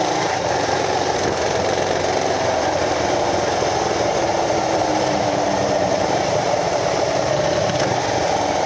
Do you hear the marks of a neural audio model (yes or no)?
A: yes